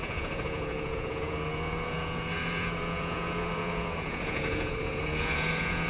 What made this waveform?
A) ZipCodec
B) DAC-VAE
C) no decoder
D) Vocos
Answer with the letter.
D